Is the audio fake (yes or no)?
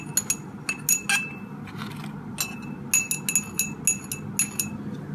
no